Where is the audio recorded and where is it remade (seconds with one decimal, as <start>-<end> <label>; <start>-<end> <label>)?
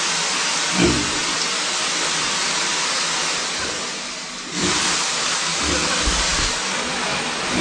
0.0-1.2 recorded; 1.2-3.1 remade; 3.1-4.6 recorded; 4.6-5.4 remade; 5.4-7.6 recorded